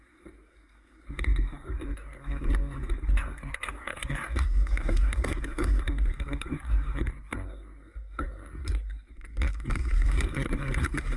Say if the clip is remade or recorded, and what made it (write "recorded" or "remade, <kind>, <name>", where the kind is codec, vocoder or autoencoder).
remade, codec, SNAC